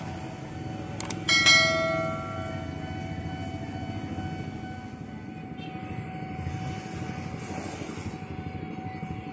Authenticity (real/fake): real